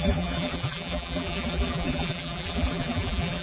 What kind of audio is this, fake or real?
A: fake